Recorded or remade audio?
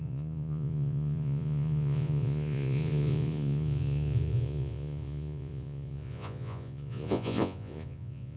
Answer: remade